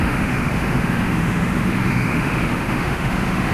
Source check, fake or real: fake